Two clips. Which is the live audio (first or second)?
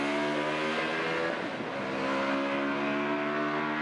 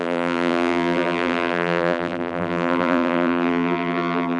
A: first